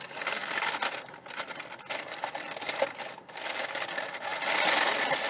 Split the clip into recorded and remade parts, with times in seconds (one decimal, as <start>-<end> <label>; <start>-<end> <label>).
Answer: 0.0-0.4 recorded; 0.4-3.6 remade; 3.6-5.3 recorded